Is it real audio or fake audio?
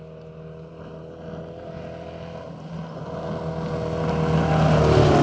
real